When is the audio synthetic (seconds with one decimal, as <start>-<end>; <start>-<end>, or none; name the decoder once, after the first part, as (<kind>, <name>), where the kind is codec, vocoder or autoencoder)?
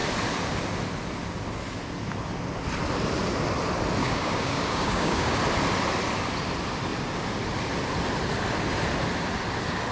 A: 4.0-5.4 (codec, DAC)